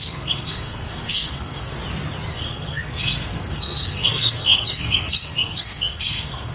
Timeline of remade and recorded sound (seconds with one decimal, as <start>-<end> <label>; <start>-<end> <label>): 0.0-1.8 remade; 1.8-2.3 recorded; 2.3-6.5 remade